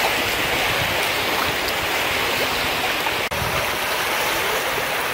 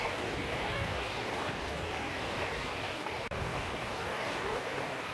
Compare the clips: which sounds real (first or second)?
first